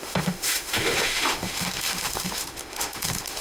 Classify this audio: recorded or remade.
remade